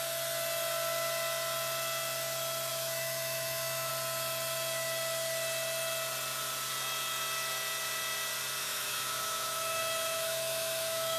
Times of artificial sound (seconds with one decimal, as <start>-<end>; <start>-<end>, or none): 2.7-3.9; 8.6-11.2